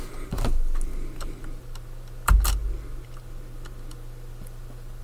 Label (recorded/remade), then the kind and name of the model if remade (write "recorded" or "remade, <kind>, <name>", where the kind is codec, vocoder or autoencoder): recorded